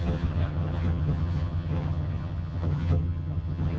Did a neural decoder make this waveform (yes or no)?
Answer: yes